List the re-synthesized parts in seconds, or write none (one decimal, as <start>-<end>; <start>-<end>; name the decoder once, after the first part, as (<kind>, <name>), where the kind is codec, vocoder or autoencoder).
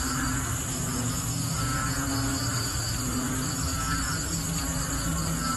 none